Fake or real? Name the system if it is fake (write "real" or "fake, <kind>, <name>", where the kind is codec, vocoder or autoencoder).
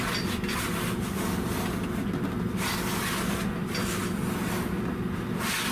real